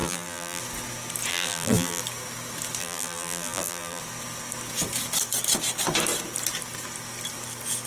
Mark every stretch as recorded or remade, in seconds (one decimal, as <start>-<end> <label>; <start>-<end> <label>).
0.0-0.6 remade; 0.6-1.3 recorded; 1.3-2.0 remade; 2.0-2.8 recorded; 2.8-4.0 remade; 4.0-7.9 recorded